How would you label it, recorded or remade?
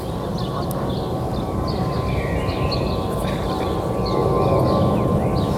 recorded